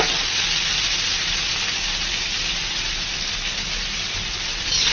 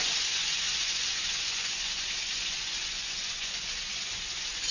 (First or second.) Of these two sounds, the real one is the first